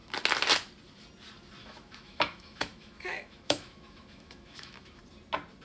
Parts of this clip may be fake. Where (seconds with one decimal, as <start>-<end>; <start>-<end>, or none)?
1.6-5.0